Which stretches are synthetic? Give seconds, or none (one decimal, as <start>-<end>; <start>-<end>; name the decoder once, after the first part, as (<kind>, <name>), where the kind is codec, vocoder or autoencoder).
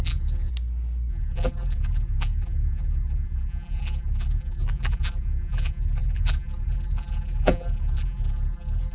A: 0.0-0.5 (vocoder, BigVGAN v2); 1.1-8.9